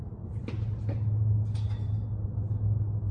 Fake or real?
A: real